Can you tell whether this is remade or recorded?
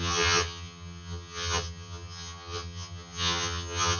remade